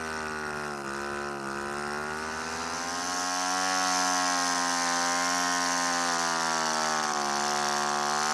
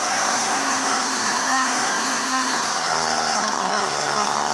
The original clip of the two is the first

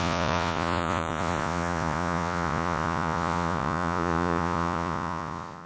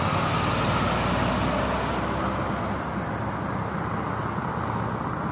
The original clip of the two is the second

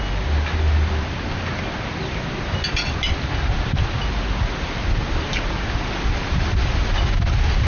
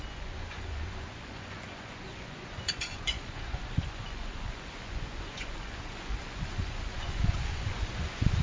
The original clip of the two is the first